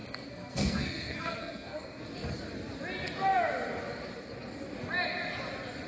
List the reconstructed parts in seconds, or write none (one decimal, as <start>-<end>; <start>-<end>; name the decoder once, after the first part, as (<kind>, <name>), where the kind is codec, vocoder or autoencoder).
0.0-2.0 (codec, SNAC)

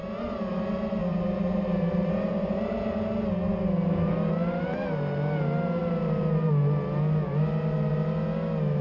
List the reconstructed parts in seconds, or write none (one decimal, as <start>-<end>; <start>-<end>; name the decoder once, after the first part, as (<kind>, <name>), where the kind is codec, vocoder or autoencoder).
0.0-0.6 (vocoder, BigVGAN v2); 1.0-2.9; 5.8-6.5

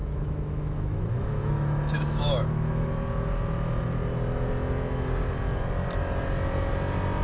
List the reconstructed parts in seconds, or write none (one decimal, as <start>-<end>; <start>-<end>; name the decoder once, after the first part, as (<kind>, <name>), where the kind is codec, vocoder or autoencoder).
0.0-2.9 (autoencoder, DAC-VAE)

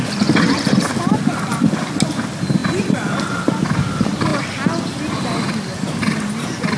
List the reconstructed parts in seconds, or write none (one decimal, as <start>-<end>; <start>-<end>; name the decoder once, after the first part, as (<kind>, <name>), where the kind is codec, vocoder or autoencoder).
none

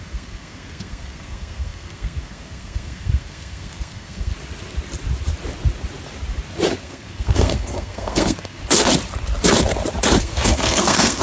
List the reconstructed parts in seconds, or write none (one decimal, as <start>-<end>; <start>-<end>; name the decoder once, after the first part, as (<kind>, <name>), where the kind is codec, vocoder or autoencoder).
0.0-4.3 (codec, SNAC); 6.8-8.6; 10.2-11.2